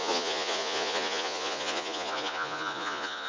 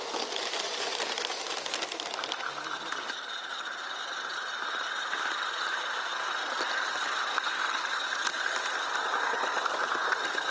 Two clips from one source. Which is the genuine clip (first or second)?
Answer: second